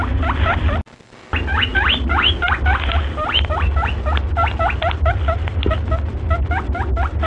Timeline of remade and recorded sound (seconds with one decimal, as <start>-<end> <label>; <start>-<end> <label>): 0.0-7.3 recorded